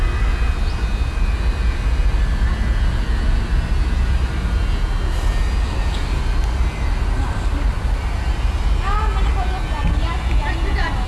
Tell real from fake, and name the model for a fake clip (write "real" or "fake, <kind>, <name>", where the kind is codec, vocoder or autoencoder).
real